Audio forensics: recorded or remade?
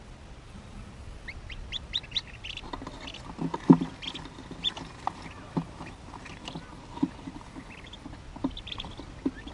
recorded